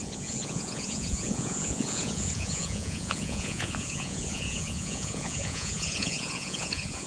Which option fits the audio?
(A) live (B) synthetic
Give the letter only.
B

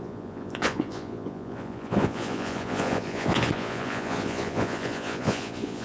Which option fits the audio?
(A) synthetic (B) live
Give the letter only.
A